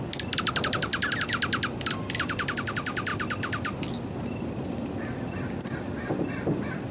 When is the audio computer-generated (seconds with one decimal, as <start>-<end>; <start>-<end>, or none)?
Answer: none